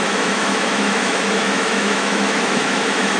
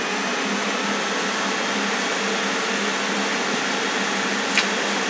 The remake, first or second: first